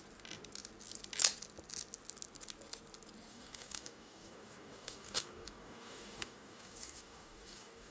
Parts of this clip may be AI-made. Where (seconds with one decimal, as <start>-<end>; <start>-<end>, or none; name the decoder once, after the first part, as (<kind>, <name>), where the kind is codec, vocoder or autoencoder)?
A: 3.3-7.9 (codec, DAC)